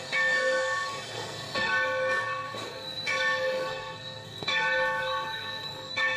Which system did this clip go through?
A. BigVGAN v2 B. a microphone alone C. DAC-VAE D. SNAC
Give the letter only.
D